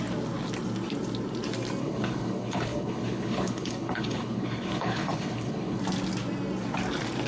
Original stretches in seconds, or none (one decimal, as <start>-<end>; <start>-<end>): 0.0-1.8; 5.8-7.3